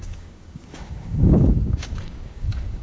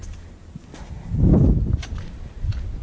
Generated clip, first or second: first